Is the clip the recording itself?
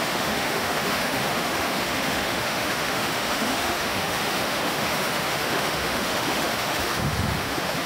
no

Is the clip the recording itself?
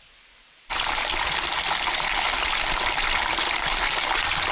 yes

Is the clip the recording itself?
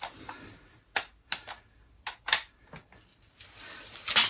yes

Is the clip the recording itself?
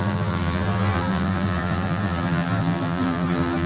no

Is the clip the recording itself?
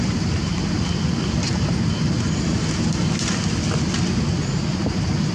yes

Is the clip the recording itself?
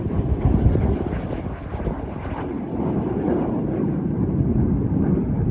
yes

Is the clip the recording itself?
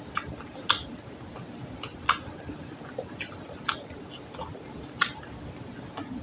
yes